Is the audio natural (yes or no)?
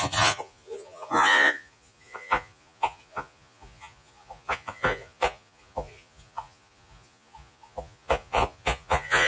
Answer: no